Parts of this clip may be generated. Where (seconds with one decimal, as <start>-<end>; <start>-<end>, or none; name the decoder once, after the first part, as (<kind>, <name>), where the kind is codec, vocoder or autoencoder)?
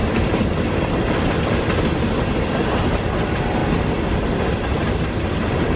none